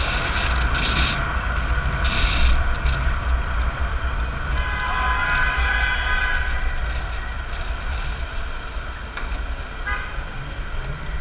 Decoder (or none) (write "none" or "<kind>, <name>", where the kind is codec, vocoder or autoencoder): none